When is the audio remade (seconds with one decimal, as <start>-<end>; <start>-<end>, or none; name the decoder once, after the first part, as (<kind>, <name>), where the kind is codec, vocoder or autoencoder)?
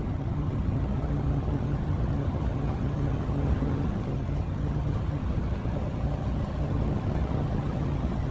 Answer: 0.0-8.3 (vocoder, HiFi-GAN)